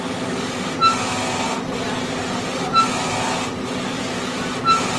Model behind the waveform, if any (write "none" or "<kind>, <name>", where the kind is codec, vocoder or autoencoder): none